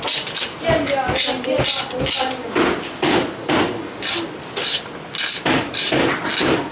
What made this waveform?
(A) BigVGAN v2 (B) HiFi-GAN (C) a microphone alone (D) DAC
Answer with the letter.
C